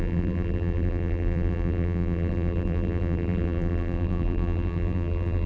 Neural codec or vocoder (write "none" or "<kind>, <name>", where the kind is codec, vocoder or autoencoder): vocoder, BigVGAN v2